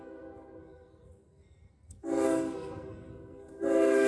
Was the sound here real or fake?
fake